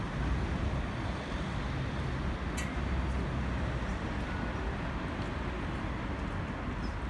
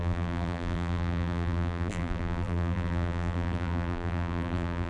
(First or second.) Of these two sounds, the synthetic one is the second